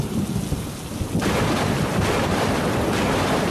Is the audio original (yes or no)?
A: yes